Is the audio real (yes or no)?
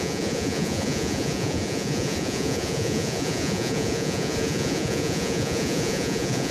no